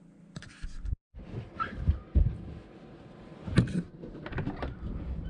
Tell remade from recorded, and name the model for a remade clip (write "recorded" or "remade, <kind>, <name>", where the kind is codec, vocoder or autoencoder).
recorded